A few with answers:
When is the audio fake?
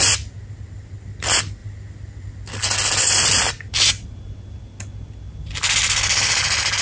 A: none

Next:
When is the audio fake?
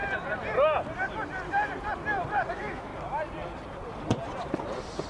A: 2.5-2.9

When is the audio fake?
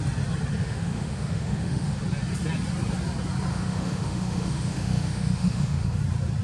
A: 0.6-2.0; 3.5-6.0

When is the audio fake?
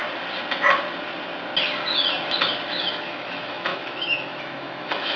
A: 2.8-5.2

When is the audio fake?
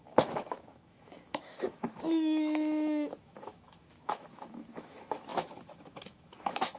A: 0.0-6.8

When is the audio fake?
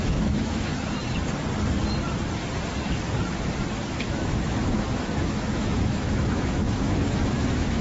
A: 0.0-0.7; 4.0-7.8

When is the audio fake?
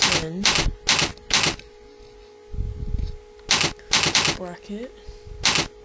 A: none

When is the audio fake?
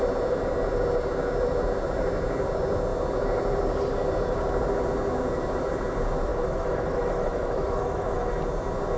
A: 6.3-8.3